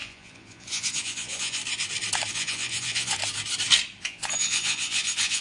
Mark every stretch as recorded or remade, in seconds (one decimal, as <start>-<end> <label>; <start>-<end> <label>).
0.0-1.6 remade; 1.6-2.3 recorded; 2.3-3.2 remade; 3.2-4.0 recorded; 4.0-5.4 remade